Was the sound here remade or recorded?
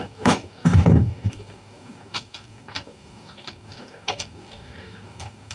remade